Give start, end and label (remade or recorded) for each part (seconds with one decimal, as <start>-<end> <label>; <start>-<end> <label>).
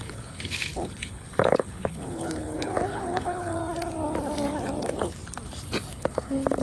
0.0-3.6 remade; 3.6-4.8 recorded; 4.8-5.2 remade; 5.2-5.9 recorded; 5.9-6.6 remade